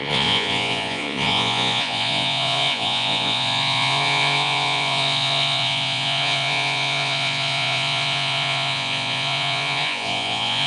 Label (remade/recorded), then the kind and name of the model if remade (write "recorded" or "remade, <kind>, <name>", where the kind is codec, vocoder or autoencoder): remade, vocoder, Vocos